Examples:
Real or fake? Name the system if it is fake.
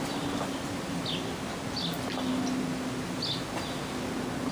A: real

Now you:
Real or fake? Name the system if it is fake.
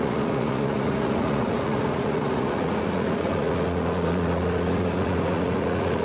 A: fake, vocoder, Vocos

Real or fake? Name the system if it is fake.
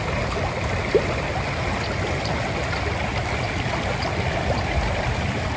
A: real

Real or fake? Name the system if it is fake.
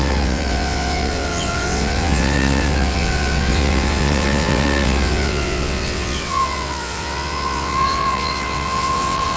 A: fake, vocoder, WaveNeXt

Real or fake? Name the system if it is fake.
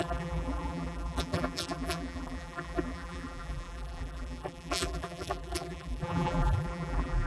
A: fake, vocoder, BigVGAN v2